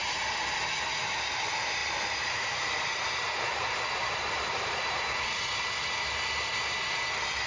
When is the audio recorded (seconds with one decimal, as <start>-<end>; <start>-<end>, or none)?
0.0-1.8; 5.0-7.5